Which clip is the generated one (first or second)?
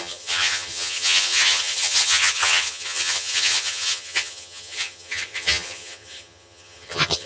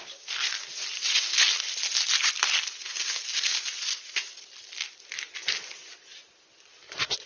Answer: first